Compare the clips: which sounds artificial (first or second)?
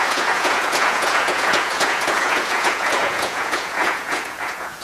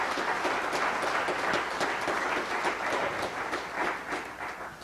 first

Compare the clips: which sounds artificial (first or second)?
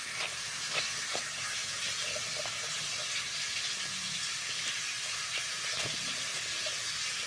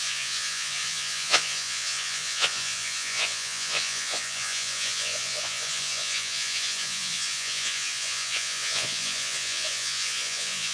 second